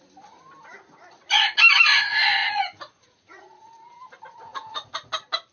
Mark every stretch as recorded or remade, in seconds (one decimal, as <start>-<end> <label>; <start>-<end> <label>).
0.0-2.4 recorded; 2.4-3.7 remade; 3.7-4.5 recorded; 4.5-5.1 remade; 5.1-5.5 recorded